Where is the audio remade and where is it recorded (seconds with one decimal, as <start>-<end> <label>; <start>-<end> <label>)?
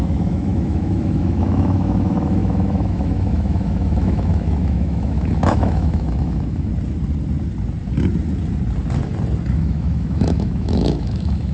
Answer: 0.0-6.7 remade; 6.7-9.5 recorded; 9.5-11.5 remade